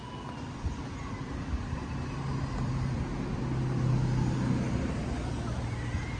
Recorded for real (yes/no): yes